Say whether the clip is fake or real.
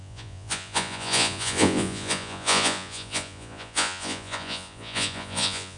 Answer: fake